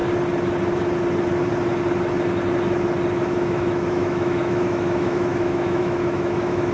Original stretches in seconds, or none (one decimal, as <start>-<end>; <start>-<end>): 0.0-3.1